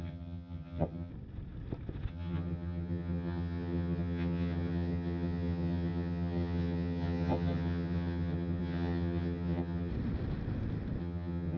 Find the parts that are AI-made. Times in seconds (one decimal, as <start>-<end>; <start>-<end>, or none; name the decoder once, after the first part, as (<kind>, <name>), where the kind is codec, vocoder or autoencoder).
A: 0.0-1.1 (vocoder, HiFi-GAN); 2.1-9.9; 11.0-11.6